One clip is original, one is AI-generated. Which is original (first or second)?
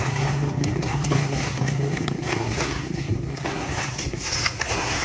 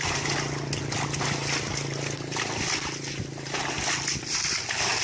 second